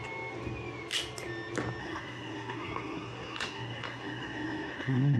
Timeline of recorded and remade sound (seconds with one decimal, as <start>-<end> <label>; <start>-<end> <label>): 0.0-1.8 recorded; 1.8-5.2 remade